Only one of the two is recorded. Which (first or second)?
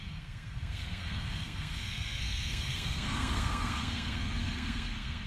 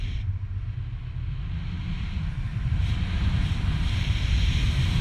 second